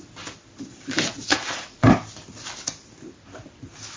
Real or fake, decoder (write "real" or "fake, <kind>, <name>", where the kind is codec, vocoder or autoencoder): real